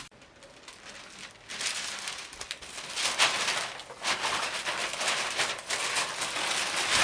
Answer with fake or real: real